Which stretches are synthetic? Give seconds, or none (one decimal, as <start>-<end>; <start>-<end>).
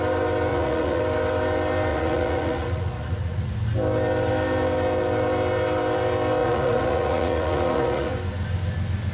0.5-1.0; 1.9-3.5; 6.4-8.1